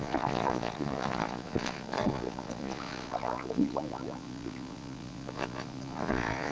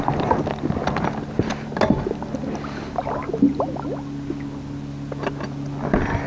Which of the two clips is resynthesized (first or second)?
first